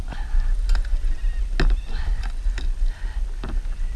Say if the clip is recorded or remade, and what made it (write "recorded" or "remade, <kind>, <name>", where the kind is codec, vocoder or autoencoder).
recorded